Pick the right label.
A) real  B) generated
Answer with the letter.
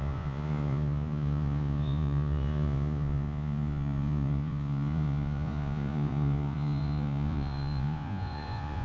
B